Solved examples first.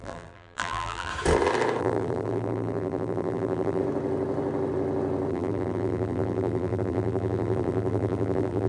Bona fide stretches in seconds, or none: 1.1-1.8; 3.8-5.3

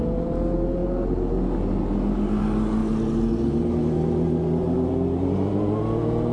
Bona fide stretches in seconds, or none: 0.0-6.3

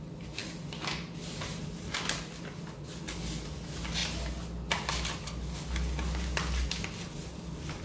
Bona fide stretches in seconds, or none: 0.0-7.8

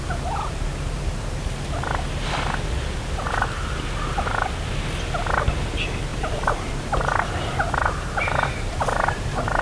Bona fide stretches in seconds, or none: 1.3-6.1